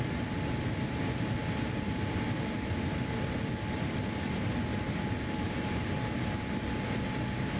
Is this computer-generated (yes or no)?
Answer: no